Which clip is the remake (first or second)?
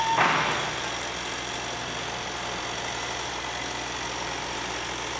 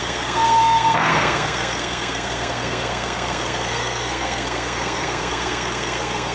second